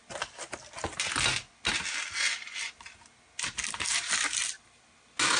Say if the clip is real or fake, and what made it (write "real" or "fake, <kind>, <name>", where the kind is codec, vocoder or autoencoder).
real